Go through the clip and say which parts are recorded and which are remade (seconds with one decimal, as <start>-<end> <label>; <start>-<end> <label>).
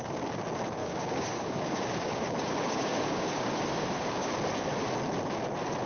0.0-0.8 recorded; 0.8-4.3 remade; 4.3-5.9 recorded